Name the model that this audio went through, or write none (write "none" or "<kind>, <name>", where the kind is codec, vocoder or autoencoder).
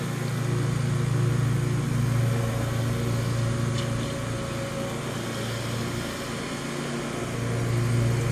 none